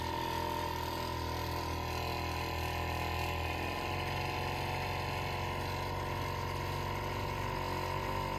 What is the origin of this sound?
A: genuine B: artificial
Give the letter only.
A